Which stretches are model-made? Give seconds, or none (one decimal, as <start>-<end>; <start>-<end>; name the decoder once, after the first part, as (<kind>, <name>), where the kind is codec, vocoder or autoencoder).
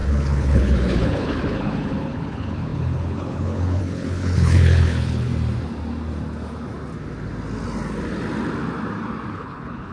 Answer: 0.0-5.3 (codec, HILCodec); 9.3-9.9